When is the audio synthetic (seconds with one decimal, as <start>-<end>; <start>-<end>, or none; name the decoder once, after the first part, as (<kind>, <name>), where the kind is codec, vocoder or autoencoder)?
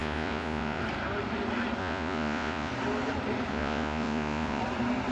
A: 0.0-0.8 (vocoder, Vocos); 1.8-2.7; 3.5-4.6